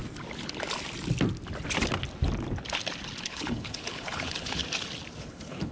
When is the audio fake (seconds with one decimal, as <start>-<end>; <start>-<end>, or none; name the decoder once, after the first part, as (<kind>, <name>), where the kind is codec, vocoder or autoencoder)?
3.2-4.6 (codec, HILCodec); 5.2-5.7